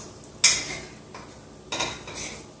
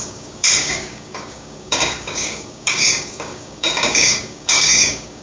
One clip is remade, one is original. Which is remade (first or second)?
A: second